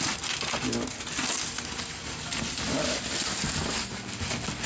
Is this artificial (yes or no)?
no